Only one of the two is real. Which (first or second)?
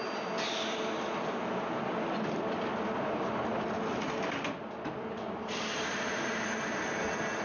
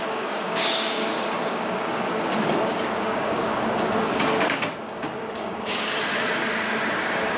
first